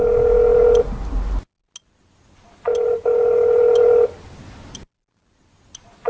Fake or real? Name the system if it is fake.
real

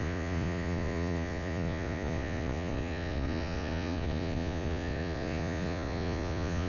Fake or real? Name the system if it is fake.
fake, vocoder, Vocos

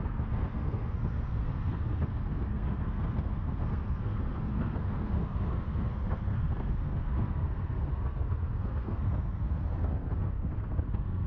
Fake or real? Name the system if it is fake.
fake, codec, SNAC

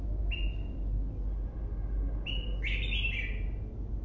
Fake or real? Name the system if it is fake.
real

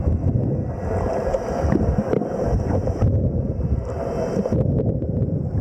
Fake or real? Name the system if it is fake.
real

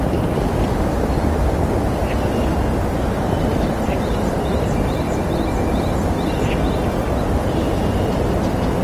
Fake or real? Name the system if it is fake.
real